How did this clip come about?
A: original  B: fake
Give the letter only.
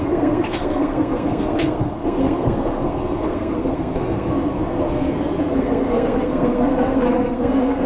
B